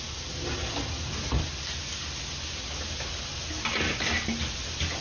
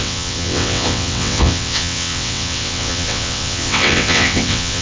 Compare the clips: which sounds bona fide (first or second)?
first